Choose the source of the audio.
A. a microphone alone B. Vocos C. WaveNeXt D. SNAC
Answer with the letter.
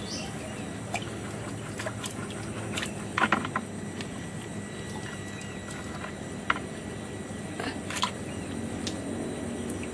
A